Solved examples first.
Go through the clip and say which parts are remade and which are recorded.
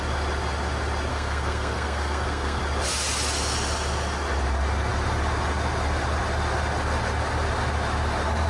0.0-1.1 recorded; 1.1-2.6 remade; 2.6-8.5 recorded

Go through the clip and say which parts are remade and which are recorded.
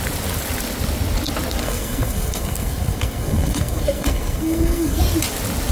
0.0-1.6 recorded; 1.6-5.0 remade; 5.0-5.7 recorded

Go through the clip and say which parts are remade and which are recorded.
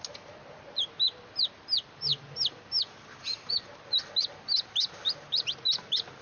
0.0-6.2 recorded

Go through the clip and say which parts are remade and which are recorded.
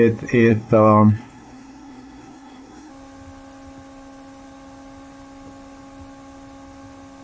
0.0-0.5 recorded; 0.5-2.9 remade; 2.9-7.2 recorded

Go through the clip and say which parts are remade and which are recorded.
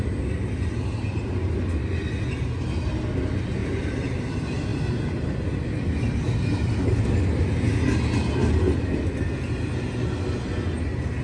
0.0-3.6 recorded; 3.6-4.3 remade; 4.3-11.2 recorded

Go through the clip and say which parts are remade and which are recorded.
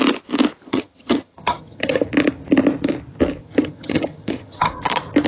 0.0-0.7 recorded; 0.7-2.0 remade; 2.0-3.4 recorded; 3.4-4.7 remade; 4.7-5.3 recorded